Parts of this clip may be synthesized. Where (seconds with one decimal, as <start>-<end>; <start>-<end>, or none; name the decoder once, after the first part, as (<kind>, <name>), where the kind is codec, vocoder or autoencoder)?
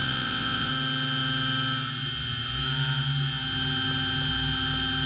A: 0.0-0.7 (vocoder, WaveNeXt)